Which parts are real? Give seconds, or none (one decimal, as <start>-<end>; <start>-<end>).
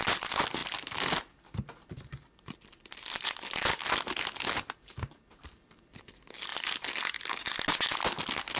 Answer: 0.0-8.6